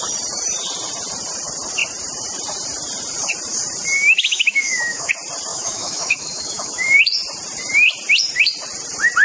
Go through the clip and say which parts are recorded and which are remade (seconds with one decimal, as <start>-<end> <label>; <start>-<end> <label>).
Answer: 0.0-4.0 recorded; 4.0-5.1 remade; 5.1-5.5 recorded; 5.5-7.0 remade; 7.0-9.2 recorded